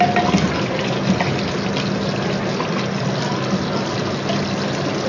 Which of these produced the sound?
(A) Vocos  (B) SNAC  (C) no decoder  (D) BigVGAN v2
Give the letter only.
C